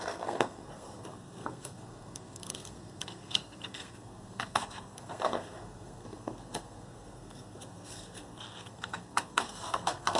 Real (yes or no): no